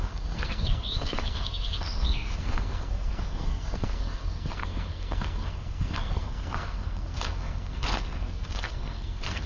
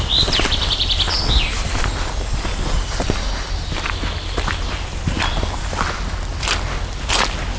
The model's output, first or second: first